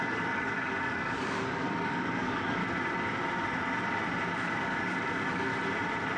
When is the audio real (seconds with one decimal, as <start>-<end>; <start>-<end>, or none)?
2.6-4.4; 5.5-6.2